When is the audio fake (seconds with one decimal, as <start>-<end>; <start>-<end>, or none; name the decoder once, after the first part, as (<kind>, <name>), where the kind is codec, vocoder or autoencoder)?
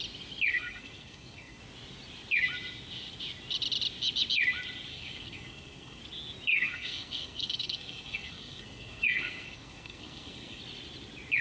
0.5-1.6 (codec, SNAC); 4.9-6.0; 6.5-10.6